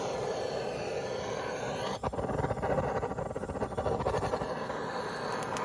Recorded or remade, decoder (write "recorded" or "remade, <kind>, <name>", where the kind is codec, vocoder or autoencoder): recorded